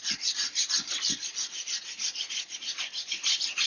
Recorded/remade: recorded